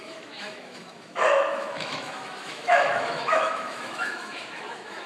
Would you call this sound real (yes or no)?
no